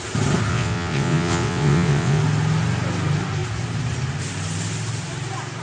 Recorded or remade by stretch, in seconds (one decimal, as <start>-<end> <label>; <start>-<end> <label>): 0.0-0.5 recorded; 0.5-2.2 remade; 2.2-5.6 recorded